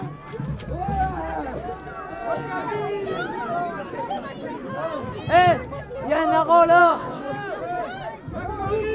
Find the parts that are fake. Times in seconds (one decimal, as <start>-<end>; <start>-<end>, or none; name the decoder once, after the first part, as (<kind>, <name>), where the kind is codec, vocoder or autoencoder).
6.8-7.3 (vocoder, WaveNeXt)

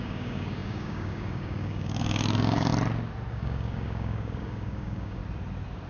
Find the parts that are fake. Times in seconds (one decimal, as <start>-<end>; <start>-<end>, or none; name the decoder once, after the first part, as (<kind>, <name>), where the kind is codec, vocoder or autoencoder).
0.0-2.7 (codec, DAC); 3.3-5.2

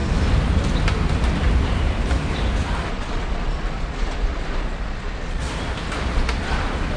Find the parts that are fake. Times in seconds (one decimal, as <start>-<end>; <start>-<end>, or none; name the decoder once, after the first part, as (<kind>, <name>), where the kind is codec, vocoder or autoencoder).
2.9-5.4 (vocoder, Vocos)

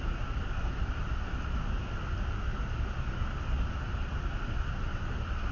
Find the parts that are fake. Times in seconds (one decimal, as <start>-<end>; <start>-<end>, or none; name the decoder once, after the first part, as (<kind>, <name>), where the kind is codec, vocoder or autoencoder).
none

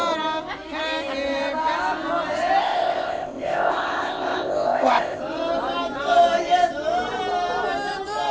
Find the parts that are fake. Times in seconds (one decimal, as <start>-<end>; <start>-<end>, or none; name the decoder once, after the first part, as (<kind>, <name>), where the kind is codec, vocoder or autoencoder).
2.6-5.2 (codec, ZipCodec)

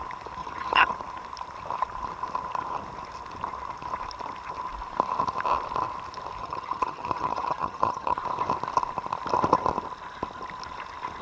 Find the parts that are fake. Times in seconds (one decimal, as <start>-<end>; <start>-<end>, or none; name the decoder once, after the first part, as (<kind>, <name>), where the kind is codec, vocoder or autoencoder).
0.4-0.9 (vocoder, HiFi-GAN); 6.4-8.2

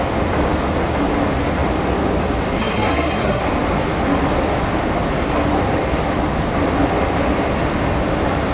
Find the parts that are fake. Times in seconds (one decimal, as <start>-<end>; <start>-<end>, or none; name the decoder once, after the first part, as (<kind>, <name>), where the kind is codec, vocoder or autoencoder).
2.6-3.4 (codec, SNAC)

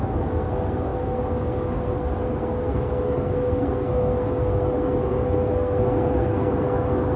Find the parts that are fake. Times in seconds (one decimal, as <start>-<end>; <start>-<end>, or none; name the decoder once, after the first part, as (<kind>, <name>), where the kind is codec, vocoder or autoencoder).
0.0-7.2 (codec, SNAC)